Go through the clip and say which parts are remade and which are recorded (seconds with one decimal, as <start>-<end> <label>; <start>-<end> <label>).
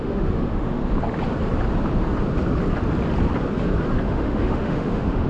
0.0-0.8 remade; 0.8-4.0 recorded; 4.0-5.3 remade